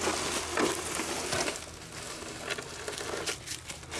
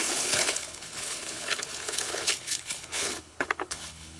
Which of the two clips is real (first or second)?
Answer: first